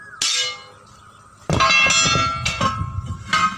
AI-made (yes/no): no